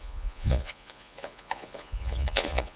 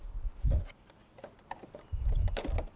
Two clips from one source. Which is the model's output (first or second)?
first